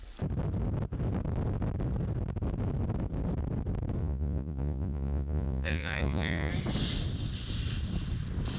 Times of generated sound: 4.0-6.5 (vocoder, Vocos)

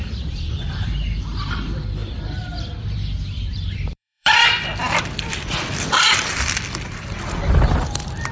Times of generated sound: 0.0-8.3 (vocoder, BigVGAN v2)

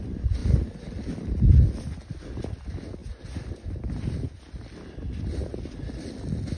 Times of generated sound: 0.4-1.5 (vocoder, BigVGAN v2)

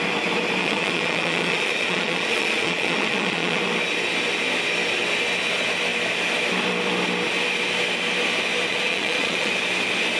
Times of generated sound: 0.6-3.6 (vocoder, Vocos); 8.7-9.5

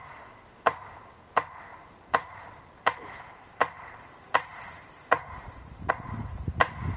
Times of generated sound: 1.7-5.9 (vocoder, BigVGAN v2)